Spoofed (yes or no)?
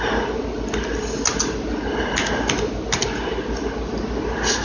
no